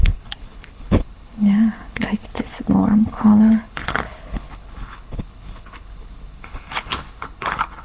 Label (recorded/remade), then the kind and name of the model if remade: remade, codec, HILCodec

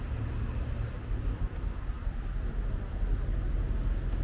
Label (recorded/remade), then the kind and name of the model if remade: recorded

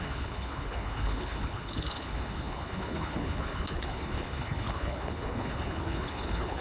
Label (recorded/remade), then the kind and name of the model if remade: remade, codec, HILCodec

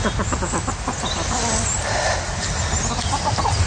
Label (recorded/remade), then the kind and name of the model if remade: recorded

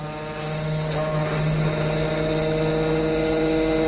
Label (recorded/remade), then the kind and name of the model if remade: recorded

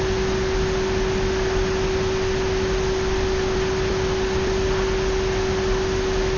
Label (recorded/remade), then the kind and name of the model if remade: recorded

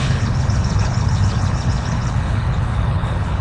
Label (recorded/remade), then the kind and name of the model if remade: remade, codec, HILCodec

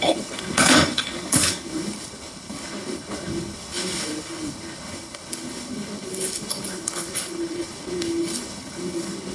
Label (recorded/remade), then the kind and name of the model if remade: remade, codec, HILCodec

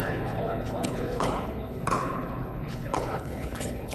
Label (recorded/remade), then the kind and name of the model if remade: remade, codec, HILCodec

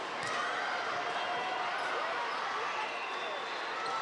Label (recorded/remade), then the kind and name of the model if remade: recorded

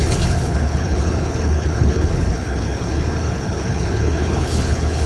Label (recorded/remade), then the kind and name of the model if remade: remade, codec, HILCodec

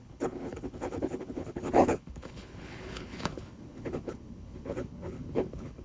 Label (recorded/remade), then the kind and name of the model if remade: remade, codec, HILCodec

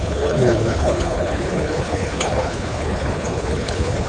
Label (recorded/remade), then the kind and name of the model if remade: remade, codec, HILCodec